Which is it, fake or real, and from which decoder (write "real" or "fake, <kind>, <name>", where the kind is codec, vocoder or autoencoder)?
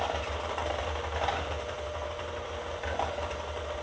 real